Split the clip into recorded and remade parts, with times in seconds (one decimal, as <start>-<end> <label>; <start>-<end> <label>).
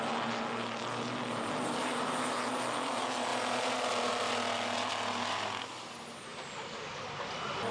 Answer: 0.0-3.3 recorded; 3.3-4.3 remade; 4.3-6.3 recorded; 6.3-6.9 remade; 6.9-7.7 recorded